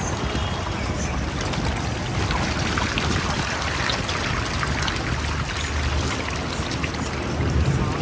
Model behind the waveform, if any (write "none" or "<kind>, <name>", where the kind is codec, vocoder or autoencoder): none